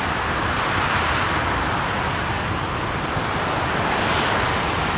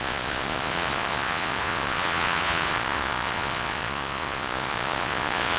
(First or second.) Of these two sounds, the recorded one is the first